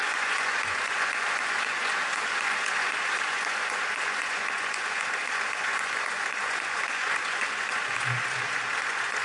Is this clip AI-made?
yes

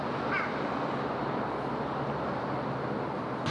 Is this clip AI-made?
no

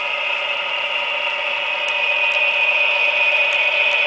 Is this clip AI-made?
no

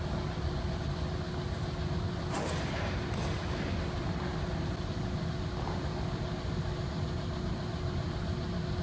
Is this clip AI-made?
no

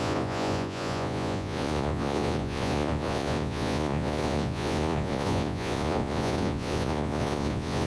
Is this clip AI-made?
yes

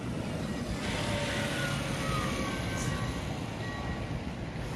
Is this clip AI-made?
no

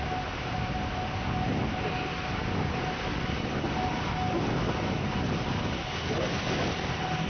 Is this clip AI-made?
no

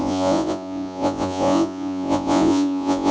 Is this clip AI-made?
yes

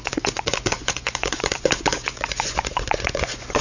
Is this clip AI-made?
yes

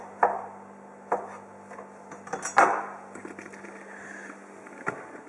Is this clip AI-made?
no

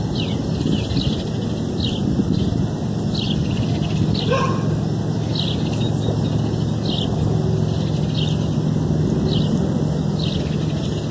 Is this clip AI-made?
no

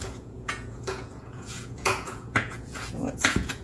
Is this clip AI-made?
yes